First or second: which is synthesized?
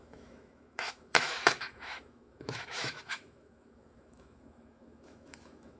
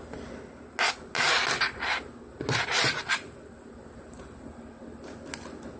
first